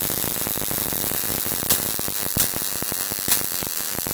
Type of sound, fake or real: real